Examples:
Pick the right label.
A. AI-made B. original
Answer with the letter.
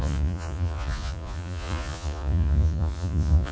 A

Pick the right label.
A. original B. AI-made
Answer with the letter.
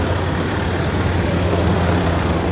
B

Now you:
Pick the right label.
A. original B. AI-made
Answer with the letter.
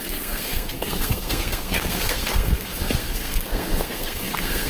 B